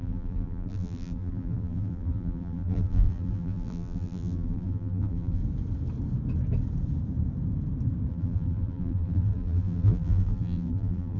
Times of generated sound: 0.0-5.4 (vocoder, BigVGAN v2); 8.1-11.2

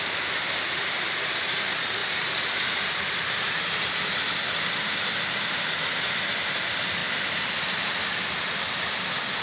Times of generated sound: none

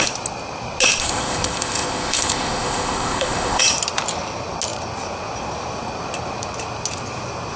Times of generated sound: 1.0-3.6 (codec, ZipCodec)

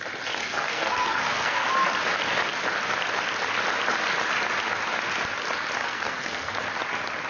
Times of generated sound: 0.4-1.7 (codec, SNAC); 5.8-6.6

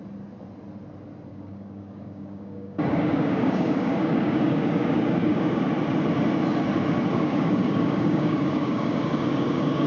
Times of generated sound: 1.3-5.6 (codec, DAC); 7.1-9.9